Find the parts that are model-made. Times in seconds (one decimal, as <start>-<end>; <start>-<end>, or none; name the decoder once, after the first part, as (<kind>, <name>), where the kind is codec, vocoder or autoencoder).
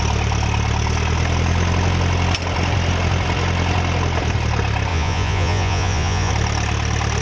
4.9-6.3 (vocoder, Vocos)